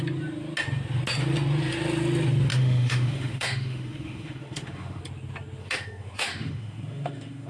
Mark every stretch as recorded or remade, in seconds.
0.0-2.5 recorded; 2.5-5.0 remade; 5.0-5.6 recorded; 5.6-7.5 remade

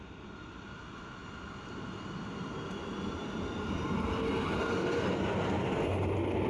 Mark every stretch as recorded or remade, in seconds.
0.0-6.5 recorded